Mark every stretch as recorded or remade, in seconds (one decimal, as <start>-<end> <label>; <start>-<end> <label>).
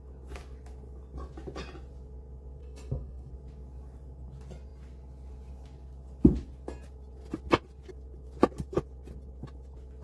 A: 0.0-2.6 recorded; 2.6-3.3 remade; 3.3-10.0 recorded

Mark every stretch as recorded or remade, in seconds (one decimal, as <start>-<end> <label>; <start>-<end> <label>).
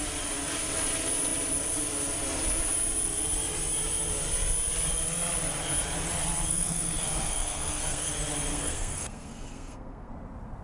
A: 0.0-6.5 recorded; 6.5-8.1 remade; 8.1-8.5 recorded; 8.5-10.1 remade; 10.1-10.6 recorded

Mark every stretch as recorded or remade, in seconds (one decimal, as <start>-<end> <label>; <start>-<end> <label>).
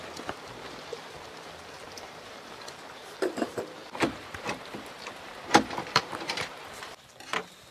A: 0.0-0.9 remade; 0.9-1.9 recorded; 1.9-7.7 remade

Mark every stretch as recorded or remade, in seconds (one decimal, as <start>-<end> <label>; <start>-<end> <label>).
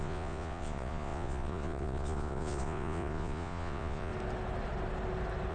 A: 0.0-4.1 remade; 4.1-5.5 recorded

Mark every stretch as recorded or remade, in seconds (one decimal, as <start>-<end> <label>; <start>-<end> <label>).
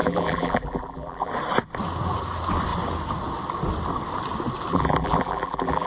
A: 0.0-1.3 remade; 1.3-4.7 recorded; 4.7-5.9 remade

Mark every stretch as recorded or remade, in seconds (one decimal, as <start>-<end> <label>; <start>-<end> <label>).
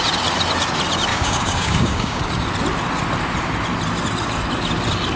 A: 0.0-1.1 recorded; 1.1-2.2 remade; 2.2-5.2 recorded